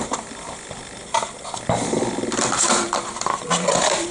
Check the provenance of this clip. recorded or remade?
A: remade